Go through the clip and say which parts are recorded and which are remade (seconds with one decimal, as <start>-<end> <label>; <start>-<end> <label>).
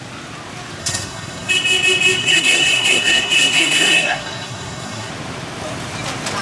0.0-0.8 recorded; 0.8-1.5 remade; 1.5-2.2 recorded; 2.2-5.1 remade; 5.1-6.4 recorded